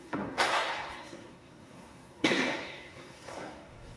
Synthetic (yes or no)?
yes